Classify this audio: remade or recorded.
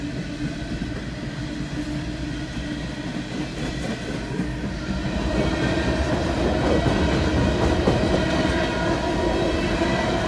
recorded